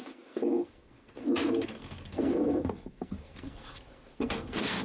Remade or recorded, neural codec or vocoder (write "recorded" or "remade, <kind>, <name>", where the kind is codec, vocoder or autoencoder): remade, codec, SNAC